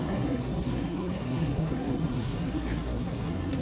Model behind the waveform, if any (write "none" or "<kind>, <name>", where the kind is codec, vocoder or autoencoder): codec, SNAC